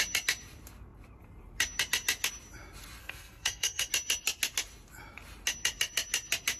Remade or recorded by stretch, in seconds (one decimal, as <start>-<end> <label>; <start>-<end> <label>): 0.0-3.0 recorded; 3.0-3.9 remade; 3.9-6.6 recorded